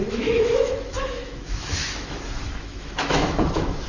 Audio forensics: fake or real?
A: fake